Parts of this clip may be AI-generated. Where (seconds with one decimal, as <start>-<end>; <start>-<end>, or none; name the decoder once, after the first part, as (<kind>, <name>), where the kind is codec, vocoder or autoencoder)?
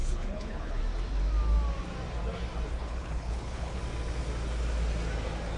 0.0-0.8 (codec, HILCodec); 2.7-3.8